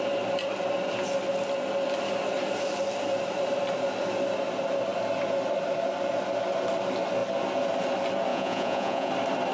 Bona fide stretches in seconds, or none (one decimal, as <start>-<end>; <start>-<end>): 0.0-8.3; 9.1-9.5